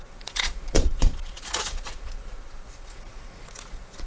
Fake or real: fake